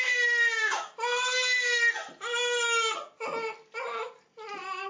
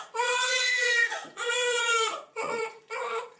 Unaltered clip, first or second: first